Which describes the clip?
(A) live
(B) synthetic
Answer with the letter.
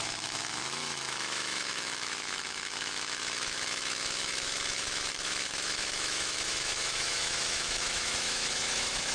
B